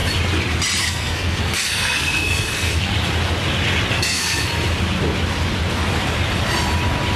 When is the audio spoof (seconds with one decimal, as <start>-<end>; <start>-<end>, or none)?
0.8-2.9; 3.9-4.5